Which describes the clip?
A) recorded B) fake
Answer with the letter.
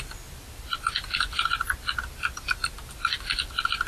B